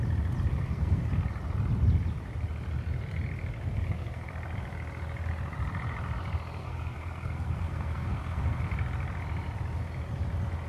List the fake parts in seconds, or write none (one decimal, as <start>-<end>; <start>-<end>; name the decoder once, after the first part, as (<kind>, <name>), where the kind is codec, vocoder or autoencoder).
0.5-1.1 (codec, SNAC); 3.7-4.3; 6.6-8.6